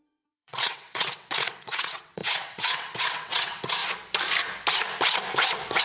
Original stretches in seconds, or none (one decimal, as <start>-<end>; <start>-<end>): 3.8-5.8